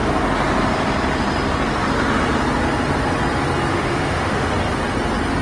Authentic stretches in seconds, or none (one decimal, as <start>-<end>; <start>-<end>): 0.0-3.7; 4.5-5.4